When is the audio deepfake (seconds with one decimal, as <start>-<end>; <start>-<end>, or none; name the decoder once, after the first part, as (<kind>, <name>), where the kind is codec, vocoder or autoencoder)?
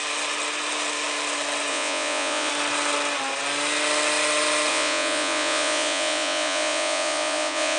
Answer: 1.7-2.5 (vocoder, Vocos); 4.7-7.8